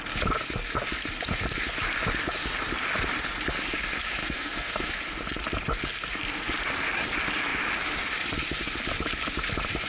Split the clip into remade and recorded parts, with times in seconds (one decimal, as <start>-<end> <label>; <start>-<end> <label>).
0.0-4.2 recorded; 4.2-4.9 remade; 4.9-9.9 recorded